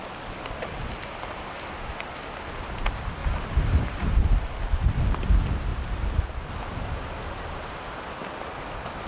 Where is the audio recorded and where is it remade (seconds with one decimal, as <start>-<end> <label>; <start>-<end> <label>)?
0.0-3.2 recorded; 3.2-4.2 remade; 4.2-5.7 recorded; 5.7-6.5 remade; 6.5-9.1 recorded

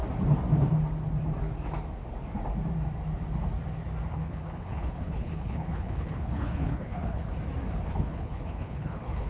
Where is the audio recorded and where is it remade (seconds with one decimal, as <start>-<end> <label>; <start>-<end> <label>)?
0.0-4.1 recorded; 4.1-7.3 remade; 7.3-7.9 recorded; 7.9-9.3 remade

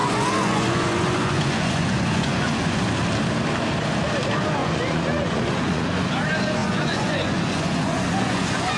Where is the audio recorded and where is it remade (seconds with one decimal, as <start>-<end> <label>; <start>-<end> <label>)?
0.0-2.8 remade; 2.8-4.6 recorded; 4.6-6.1 remade; 6.1-6.6 recorded; 6.6-8.8 remade

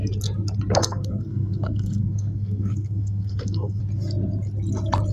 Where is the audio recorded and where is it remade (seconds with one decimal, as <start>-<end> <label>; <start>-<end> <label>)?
0.0-0.8 recorded; 0.8-3.8 remade; 3.8-5.1 recorded

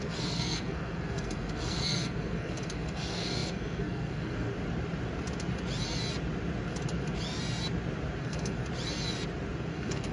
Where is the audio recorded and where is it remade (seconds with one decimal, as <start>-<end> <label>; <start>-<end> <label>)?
0.0-4.5 remade; 4.5-8.2 recorded; 8.2-8.6 remade; 8.6-9.7 recorded; 9.7-10.1 remade

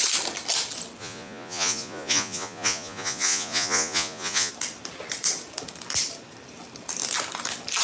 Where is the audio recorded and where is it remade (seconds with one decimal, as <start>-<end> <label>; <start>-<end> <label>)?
0.0-1.0 recorded; 1.0-4.5 remade; 4.5-7.8 recorded